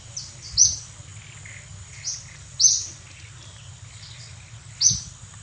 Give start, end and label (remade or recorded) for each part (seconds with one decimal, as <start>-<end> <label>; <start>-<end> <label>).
0.0-5.4 recorded